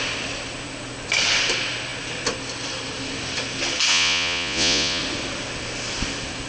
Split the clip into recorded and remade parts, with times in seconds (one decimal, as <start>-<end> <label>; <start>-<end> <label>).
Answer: 0.0-3.9 recorded; 3.9-5.0 remade; 5.0-6.5 recorded